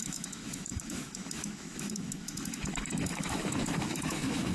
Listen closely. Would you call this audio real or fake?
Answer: fake